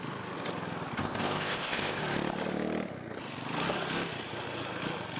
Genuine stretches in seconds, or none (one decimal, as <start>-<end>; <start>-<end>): 0.0-1.0; 2.0-5.2